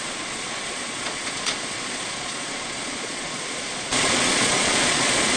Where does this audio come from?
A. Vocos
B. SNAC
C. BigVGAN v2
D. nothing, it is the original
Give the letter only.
A